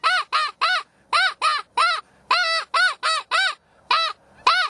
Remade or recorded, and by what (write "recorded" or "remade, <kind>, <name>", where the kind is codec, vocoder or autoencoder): recorded